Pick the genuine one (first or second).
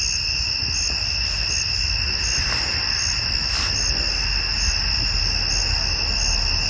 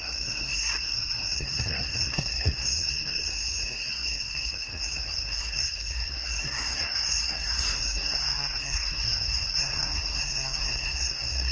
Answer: first